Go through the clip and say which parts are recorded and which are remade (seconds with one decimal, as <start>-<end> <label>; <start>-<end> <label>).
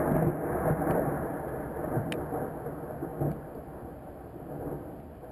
0.0-5.3 recorded